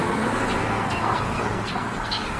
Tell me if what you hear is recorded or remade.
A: remade